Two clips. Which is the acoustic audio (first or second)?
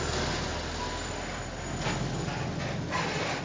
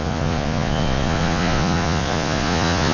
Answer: first